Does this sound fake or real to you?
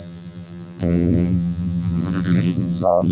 fake